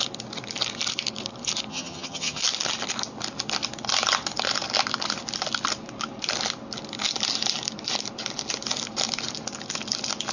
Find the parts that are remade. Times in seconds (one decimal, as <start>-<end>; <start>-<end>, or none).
1.7-2.4